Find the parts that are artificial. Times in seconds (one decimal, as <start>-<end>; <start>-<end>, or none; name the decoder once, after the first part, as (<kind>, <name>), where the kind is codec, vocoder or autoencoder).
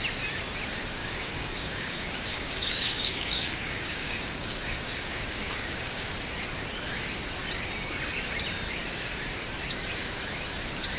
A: 1.0-6.1 (codec, DAC)